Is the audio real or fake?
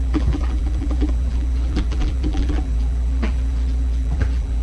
fake